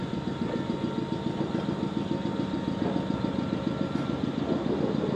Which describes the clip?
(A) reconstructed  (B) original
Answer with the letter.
B